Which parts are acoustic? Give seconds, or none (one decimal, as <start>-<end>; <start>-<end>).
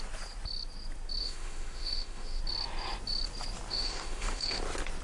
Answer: 0.0-1.2; 2.4-3.7; 4.6-5.0